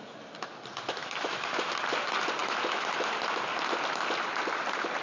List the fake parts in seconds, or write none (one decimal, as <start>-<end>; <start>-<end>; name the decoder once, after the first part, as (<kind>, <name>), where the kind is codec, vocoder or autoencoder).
1.0-1.7 (autoencoder, DAC-VAE); 2.4-3.1